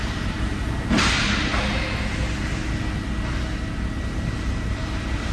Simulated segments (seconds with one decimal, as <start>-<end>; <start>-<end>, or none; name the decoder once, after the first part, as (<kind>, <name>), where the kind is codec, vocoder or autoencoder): 0.0-1.5 (vocoder, BigVGAN v2); 4.0-5.3